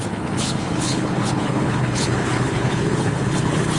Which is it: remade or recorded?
remade